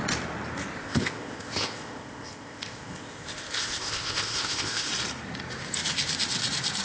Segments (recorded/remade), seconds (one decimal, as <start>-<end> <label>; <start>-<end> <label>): 0.0-0.8 recorded; 0.8-4.9 remade; 4.9-6.8 recorded